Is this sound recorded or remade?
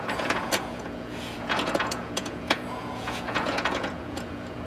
remade